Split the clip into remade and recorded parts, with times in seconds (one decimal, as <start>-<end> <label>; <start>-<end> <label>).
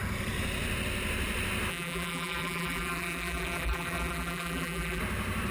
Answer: 0.0-1.7 recorded; 1.7-5.0 remade; 5.0-5.5 recorded